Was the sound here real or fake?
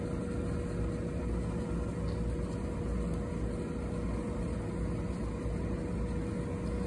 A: real